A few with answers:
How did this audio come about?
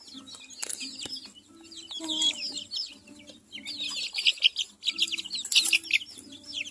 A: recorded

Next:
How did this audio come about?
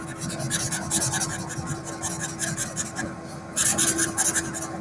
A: recorded